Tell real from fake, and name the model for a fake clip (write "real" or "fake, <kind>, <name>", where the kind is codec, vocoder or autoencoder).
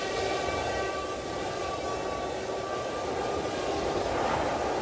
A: fake, vocoder, BigVGAN v2